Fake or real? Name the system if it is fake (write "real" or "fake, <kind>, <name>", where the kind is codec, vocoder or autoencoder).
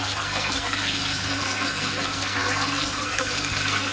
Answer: fake, codec, SNAC